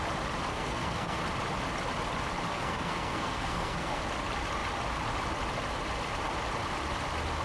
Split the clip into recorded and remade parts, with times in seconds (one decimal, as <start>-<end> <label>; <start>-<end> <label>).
0.0-0.5 recorded; 0.5-1.2 remade; 1.2-2.5 recorded; 2.5-4.0 remade; 4.0-7.4 recorded